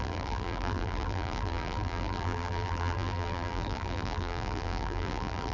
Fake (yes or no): yes